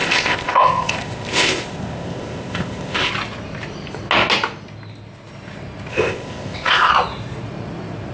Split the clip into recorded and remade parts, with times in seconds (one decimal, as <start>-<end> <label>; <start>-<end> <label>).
0.0-3.1 remade; 3.1-5.9 recorded; 5.9-6.9 remade; 6.9-8.1 recorded